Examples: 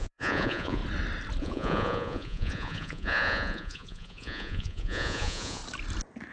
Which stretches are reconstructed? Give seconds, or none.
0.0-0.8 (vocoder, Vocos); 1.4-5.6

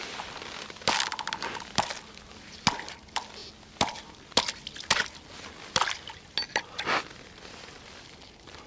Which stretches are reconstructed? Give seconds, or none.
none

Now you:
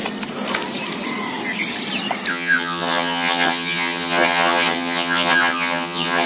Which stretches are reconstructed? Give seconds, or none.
2.3-6.3 (vocoder, HiFi-GAN)